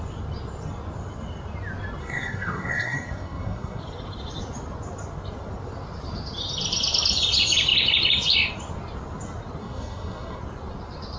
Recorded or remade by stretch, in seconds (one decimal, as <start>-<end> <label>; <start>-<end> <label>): 0.0-2.0 recorded; 2.0-3.8 remade; 3.8-9.6 recorded; 9.6-10.4 remade; 10.4-11.2 recorded